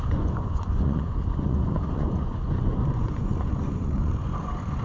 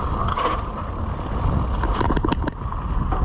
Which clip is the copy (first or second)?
first